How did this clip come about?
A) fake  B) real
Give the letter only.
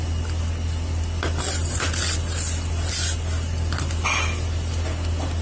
B